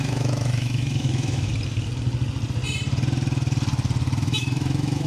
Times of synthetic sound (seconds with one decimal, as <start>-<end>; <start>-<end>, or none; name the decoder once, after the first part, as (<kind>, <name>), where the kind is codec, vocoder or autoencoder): 0.0-1.5 (autoencoder, DAC-VAE); 4.2-5.1